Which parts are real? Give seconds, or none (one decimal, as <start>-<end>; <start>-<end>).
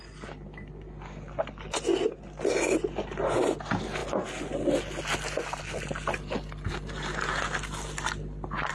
0.0-8.7